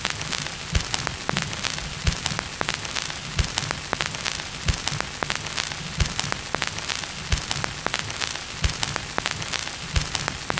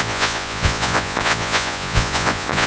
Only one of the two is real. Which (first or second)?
first